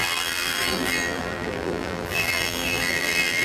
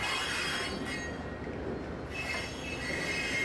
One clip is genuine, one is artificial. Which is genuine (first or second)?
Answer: second